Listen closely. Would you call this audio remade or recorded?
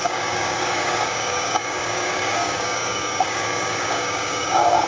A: remade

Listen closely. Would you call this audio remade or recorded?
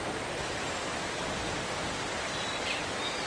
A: recorded